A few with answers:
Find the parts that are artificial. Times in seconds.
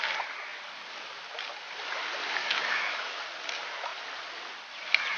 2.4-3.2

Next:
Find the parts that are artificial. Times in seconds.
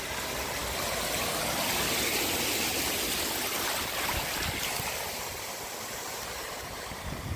none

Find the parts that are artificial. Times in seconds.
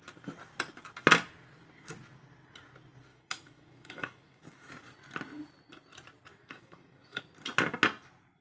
3.1-4.7; 6.3-7.2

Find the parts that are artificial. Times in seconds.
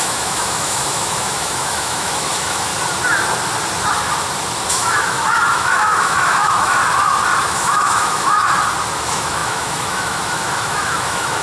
0.0-2.7; 4.7-6.8; 7.4-8.4; 9.0-11.4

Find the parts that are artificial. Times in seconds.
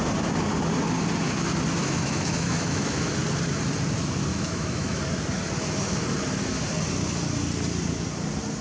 1.8-3.1; 4.3-5.0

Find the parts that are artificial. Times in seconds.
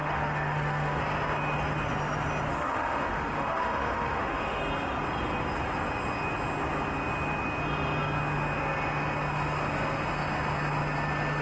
0.0-1.0; 2.5-4.6